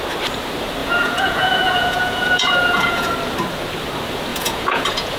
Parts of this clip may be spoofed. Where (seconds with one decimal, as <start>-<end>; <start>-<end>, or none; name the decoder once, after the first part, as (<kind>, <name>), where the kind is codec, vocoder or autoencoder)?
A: 0.8-3.1 (vocoder, Vocos); 4.3-5.2